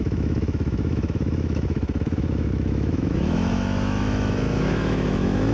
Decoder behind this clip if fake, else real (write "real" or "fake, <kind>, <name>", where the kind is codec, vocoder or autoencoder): fake, autoencoder, DAC-VAE